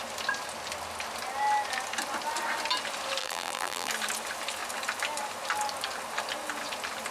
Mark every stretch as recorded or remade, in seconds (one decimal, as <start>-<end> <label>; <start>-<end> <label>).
0.0-3.2 recorded; 3.2-3.9 remade; 3.9-7.1 recorded